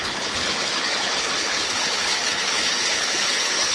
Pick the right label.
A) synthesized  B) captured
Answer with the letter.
A